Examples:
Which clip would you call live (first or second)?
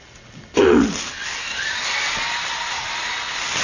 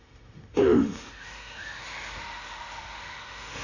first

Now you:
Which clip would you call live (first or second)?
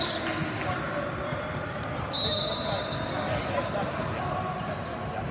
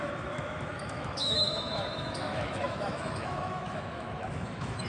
first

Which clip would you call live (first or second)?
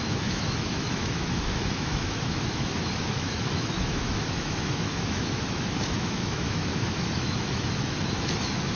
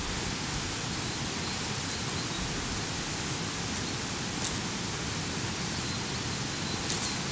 second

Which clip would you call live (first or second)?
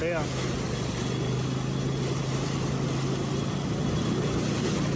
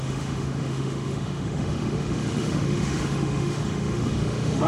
first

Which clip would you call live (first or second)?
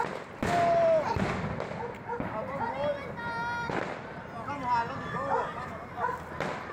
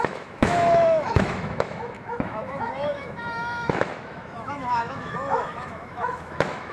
first